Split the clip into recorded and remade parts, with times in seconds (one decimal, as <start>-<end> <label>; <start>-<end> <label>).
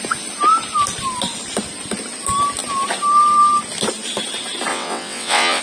0.0-4.7 recorded; 4.7-5.6 remade